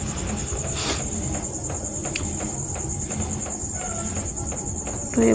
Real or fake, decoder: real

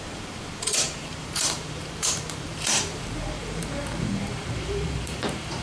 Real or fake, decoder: fake, vocoder, BigVGAN v2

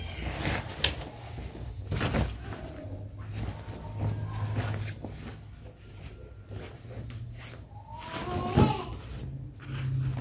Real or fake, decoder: real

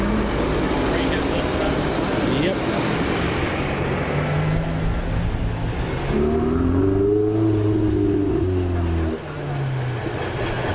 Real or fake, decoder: real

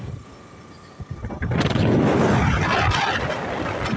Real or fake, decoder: real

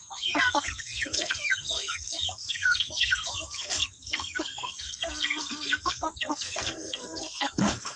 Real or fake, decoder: fake, codec, SNAC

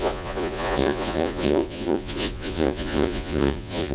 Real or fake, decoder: fake, vocoder, Vocos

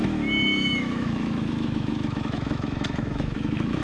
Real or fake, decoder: fake, autoencoder, DAC-VAE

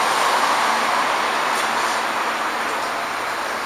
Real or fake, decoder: real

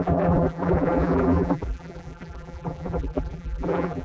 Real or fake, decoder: fake, vocoder, BigVGAN v2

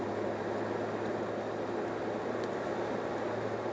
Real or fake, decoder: real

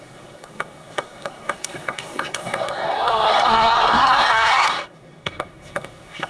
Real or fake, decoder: fake, codec, SNAC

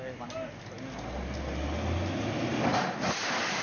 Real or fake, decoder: real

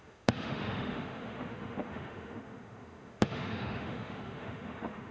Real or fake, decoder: fake, autoencoder, DAC-VAE